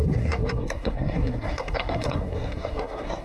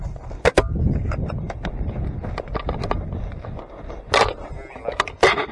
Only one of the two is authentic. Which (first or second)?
second